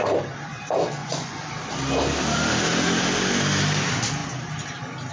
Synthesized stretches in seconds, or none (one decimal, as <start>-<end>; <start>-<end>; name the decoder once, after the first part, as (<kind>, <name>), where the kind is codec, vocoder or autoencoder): 1.0-1.5 (vocoder, Vocos)